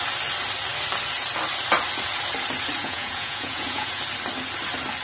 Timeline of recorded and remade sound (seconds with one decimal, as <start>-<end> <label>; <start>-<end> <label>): 0.0-2.8 recorded; 2.8-4.0 remade; 4.0-5.0 recorded

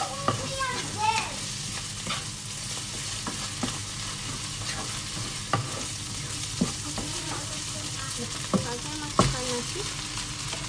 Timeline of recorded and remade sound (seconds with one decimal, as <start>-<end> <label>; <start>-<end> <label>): 0.0-10.7 recorded

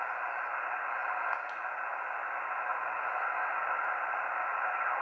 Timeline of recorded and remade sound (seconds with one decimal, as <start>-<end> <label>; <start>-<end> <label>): 0.0-5.0 recorded